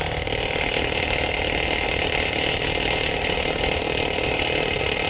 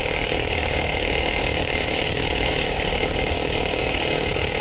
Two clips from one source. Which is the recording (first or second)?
first